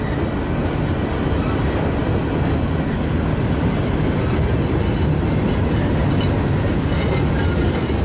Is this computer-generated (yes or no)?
no